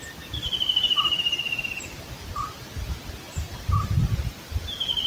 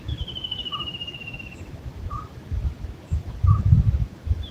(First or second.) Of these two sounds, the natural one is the first